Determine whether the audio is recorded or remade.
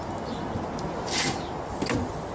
recorded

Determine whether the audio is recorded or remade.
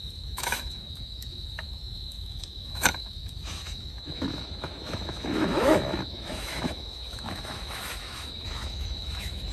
remade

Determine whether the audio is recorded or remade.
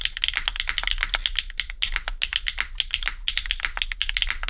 recorded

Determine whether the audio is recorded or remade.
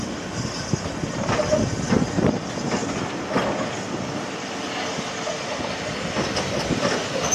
recorded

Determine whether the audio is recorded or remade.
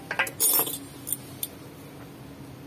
recorded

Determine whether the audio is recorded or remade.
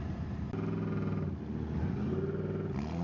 recorded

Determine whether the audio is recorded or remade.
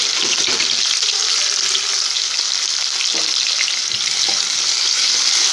recorded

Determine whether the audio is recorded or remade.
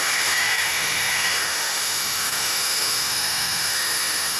remade